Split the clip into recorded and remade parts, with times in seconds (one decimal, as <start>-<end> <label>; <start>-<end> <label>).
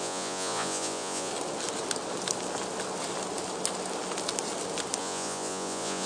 0.0-1.3 remade; 1.3-5.0 recorded; 5.0-6.1 remade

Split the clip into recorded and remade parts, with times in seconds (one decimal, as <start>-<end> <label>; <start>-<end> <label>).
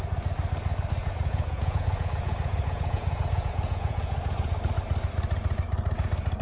0.0-1.0 recorded; 1.0-4.5 remade; 4.5-6.4 recorded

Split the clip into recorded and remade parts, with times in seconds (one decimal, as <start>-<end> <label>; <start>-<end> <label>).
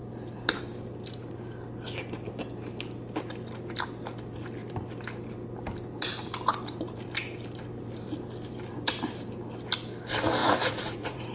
0.0-10.4 recorded; 10.4-11.3 remade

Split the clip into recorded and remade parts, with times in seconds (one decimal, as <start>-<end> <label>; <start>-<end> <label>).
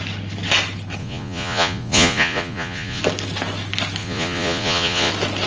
0.0-1.0 recorded; 1.0-3.0 remade; 3.0-4.0 recorded; 4.0-5.1 remade; 5.1-5.5 recorded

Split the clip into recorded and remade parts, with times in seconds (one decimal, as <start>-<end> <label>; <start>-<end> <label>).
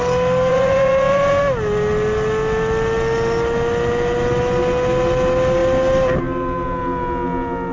0.0-0.5 recorded; 0.5-1.4 remade; 1.4-7.7 recorded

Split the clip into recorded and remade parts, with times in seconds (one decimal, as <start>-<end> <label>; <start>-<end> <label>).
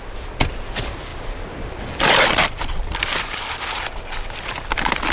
0.0-5.1 recorded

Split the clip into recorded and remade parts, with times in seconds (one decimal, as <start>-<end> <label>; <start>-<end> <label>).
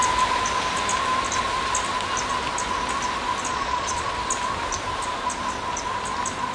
0.0-3.5 recorded; 3.5-4.1 remade; 4.1-6.5 recorded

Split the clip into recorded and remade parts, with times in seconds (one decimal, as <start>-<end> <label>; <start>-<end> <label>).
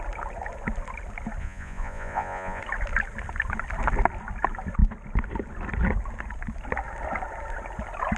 0.0-1.4 recorded; 1.4-2.6 remade; 2.6-8.2 recorded